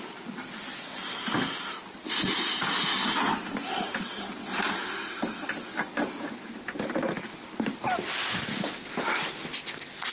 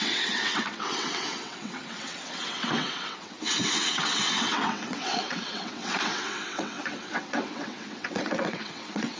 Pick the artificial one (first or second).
second